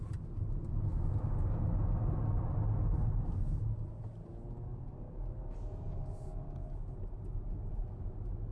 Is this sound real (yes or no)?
yes